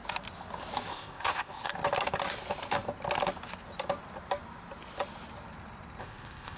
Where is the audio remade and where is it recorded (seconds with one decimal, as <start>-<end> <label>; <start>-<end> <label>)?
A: 0.0-0.9 recorded; 0.9-1.7 remade; 1.7-6.0 recorded; 6.0-6.6 remade